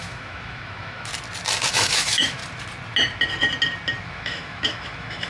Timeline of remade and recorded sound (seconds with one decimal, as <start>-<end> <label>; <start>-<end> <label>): 0.0-1.1 remade; 1.1-1.7 recorded; 1.7-2.4 remade; 2.4-4.0 recorded; 4.0-5.3 remade